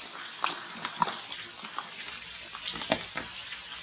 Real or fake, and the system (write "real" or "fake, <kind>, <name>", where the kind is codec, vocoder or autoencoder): real